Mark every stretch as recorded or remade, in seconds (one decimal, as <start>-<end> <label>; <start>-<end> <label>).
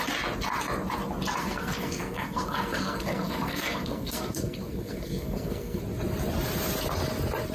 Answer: 0.0-1.4 recorded; 1.4-5.8 remade; 5.8-7.5 recorded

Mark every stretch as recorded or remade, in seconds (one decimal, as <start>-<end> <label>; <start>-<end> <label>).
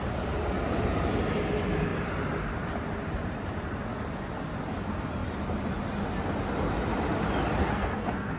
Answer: 0.0-7.6 recorded; 7.6-8.4 remade